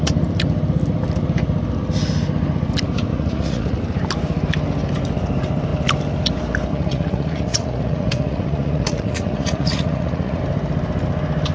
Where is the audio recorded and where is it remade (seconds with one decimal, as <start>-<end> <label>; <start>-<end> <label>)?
0.0-3.1 recorded; 3.1-3.8 remade; 3.8-6.7 recorded; 6.7-10.4 remade; 10.4-11.5 recorded